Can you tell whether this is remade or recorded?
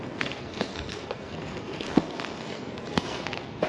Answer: remade